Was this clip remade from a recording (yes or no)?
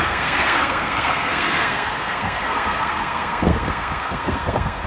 yes